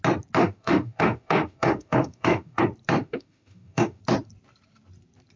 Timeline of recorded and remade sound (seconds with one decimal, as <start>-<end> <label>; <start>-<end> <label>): 0.0-0.4 recorded; 0.4-2.6 remade; 2.6-3.0 recorded; 3.0-4.0 remade; 4.0-5.4 recorded